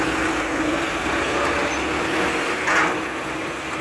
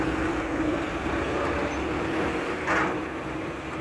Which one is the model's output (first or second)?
second